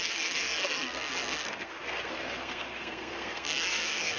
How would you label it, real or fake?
fake